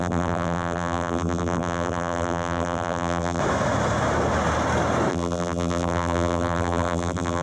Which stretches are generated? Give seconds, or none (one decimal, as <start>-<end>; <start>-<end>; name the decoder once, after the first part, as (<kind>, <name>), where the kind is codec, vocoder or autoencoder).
0.0-3.4 (vocoder, BigVGAN v2); 5.1-7.4